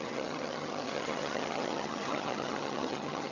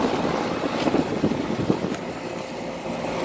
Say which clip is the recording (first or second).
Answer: second